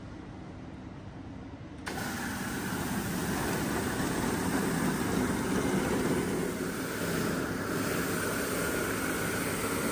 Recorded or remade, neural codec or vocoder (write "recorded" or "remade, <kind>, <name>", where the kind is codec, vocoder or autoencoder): recorded